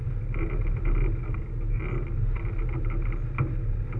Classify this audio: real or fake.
real